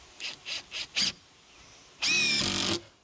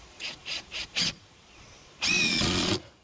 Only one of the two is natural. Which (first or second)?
first